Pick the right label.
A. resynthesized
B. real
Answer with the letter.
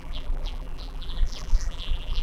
A